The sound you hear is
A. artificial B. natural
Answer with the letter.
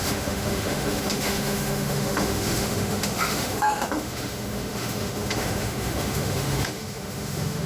A